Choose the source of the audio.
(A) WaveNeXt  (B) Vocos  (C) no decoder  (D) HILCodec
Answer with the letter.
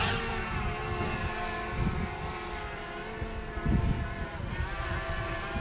C